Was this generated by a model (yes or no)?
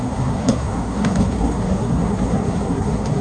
yes